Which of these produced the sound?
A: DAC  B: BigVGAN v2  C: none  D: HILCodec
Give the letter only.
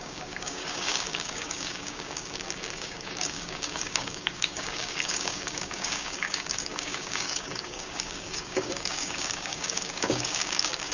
A